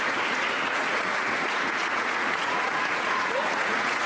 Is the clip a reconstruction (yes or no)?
yes